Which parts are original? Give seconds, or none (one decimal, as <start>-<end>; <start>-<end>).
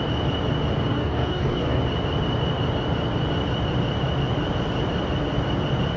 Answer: 0.0-0.9; 1.8-6.0